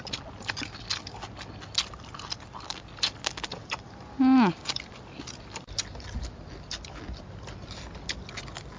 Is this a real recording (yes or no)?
yes